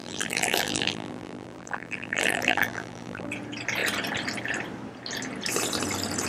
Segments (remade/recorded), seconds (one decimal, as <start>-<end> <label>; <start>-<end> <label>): 0.0-3.3 remade; 3.3-6.3 recorded